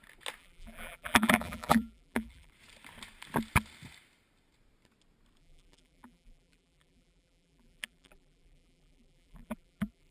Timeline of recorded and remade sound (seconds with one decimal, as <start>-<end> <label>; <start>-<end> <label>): 0.0-0.4 recorded; 0.4-2.5 remade; 2.5-5.4 recorded; 5.4-10.1 remade